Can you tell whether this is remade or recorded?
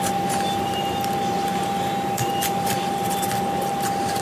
recorded